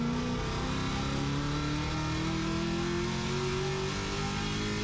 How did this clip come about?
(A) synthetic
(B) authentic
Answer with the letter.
B